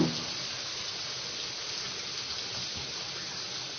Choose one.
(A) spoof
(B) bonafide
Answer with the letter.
B